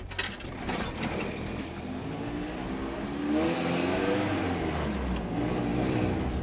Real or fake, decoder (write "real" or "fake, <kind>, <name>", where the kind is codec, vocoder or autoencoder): real